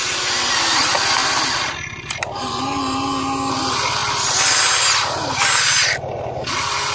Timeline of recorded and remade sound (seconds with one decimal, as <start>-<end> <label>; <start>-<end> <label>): 0.0-6.9 recorded